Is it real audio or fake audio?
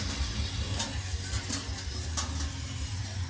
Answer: real